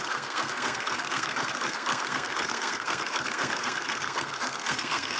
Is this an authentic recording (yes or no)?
no